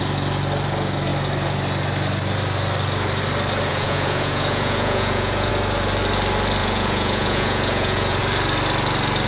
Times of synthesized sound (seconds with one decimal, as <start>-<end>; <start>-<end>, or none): 3.7-5.5; 6.6-8.2